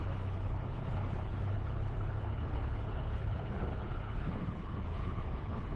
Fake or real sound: fake